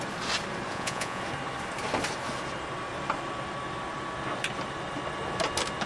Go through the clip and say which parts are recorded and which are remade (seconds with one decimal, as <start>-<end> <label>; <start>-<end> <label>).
0.0-0.7 recorded; 0.7-1.2 remade; 1.2-5.9 recorded